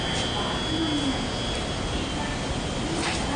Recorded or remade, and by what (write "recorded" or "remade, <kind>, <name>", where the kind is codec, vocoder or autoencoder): recorded